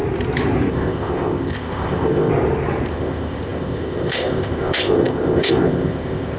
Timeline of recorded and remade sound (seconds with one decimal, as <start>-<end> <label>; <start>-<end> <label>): 0.0-0.7 recorded; 0.7-2.3 remade; 2.3-2.9 recorded; 2.9-6.4 remade